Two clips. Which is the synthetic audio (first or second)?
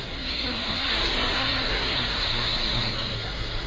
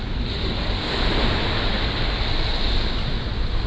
first